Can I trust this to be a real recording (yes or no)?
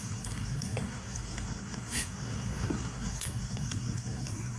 no